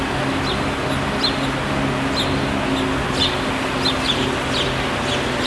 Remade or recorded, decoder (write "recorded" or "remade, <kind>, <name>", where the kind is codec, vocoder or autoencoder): recorded